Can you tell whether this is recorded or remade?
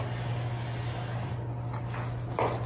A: recorded